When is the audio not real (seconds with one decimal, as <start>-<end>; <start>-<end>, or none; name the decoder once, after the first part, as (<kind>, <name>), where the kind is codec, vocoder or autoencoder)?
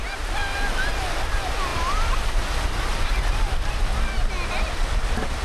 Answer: 0.0-0.8 (vocoder, BigVGAN v2); 1.7-2.4; 2.9-4.3